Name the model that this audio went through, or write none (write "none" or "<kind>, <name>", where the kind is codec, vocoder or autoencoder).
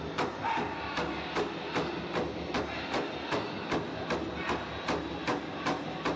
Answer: none